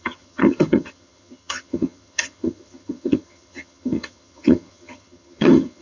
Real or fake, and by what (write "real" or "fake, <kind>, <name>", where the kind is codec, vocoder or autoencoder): fake, vocoder, HiFi-GAN